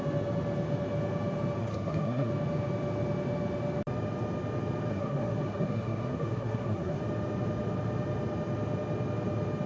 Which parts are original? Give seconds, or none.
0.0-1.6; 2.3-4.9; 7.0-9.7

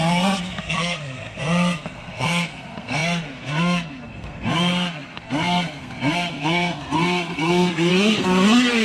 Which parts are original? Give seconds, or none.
none